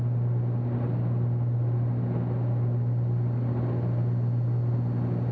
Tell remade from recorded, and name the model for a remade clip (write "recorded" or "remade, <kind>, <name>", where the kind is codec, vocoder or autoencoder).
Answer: recorded